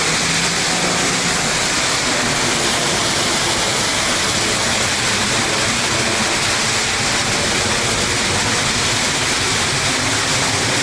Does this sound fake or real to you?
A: real